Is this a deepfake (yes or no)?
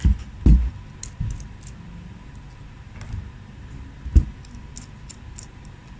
no